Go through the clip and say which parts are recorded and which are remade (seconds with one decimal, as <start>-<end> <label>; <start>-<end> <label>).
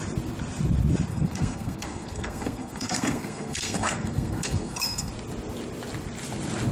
0.0-1.1 recorded; 1.1-5.1 remade; 5.1-6.7 recorded